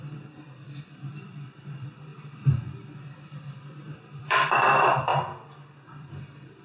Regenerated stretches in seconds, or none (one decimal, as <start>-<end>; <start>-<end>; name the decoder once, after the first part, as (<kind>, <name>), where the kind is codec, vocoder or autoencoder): 0.0-2.1 (vocoder, BigVGAN v2); 3.0-5.1; 5.9-6.6